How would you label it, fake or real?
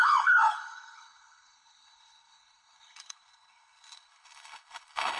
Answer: fake